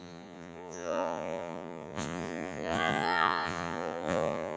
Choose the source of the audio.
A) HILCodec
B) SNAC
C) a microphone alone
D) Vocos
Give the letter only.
D